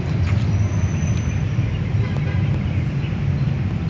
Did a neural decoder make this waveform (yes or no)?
no